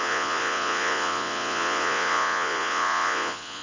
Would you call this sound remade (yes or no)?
yes